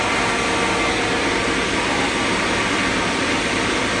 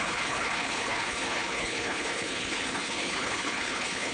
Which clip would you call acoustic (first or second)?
first